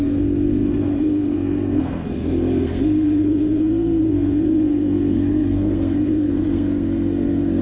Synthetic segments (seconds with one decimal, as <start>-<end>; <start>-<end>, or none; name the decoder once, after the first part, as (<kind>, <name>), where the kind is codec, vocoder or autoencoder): 0.0-7.6 (codec, SNAC)